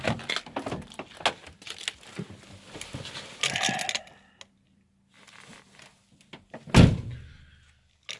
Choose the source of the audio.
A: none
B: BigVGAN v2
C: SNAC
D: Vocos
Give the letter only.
A